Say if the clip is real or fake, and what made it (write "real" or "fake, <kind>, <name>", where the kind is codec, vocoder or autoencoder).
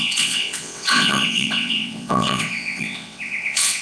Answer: fake, vocoder, WaveNeXt